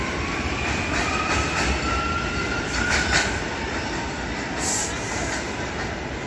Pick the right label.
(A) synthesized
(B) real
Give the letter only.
A